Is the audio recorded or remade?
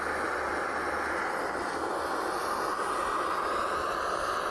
recorded